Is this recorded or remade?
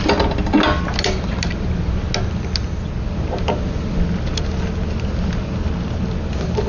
recorded